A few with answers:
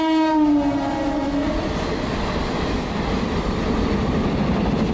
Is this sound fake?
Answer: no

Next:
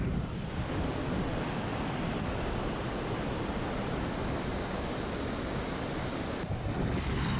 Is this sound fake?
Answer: no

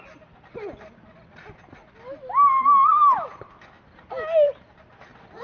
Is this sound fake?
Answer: no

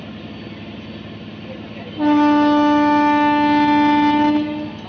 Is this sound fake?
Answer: no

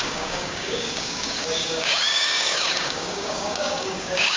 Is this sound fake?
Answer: yes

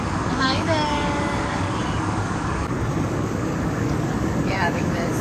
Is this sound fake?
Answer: yes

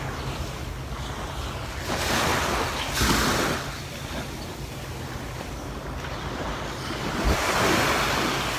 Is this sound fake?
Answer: no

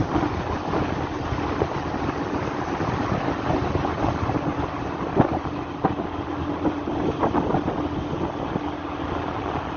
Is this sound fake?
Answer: no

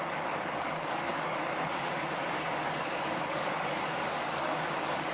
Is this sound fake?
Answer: yes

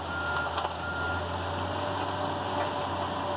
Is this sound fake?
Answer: no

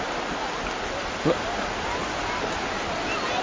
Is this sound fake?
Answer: no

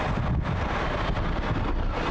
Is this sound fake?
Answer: no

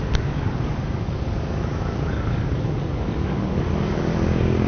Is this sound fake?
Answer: yes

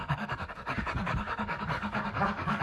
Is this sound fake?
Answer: yes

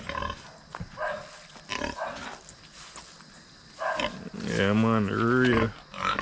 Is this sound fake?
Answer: no